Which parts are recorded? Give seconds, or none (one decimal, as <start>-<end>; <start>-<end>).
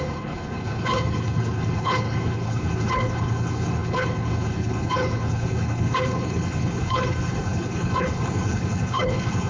none